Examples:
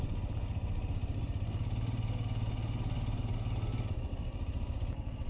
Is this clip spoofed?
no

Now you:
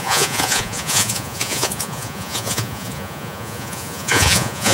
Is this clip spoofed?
yes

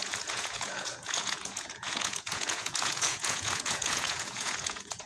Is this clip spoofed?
yes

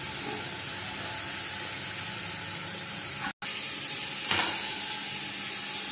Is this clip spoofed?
no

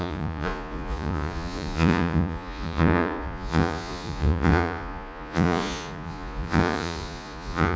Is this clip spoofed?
yes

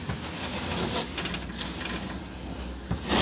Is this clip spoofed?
no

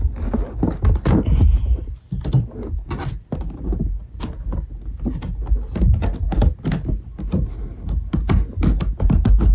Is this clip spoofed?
no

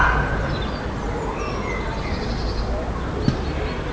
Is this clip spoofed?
no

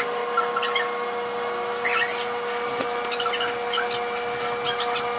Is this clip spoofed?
no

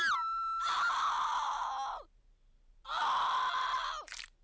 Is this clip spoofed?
no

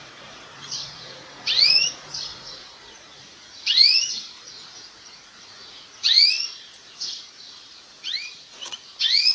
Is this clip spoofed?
yes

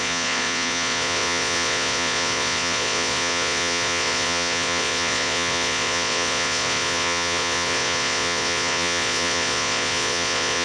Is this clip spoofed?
yes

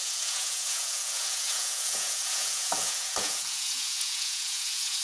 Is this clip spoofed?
yes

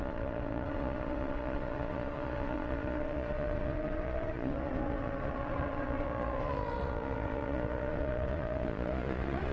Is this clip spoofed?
yes